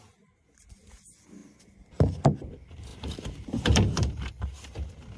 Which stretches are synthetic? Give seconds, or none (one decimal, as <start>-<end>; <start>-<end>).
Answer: 2.9-4.3